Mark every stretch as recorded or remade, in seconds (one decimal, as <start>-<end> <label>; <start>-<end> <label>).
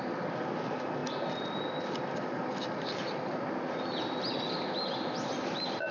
0.0-5.9 recorded